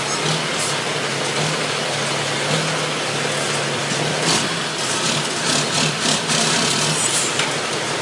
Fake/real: real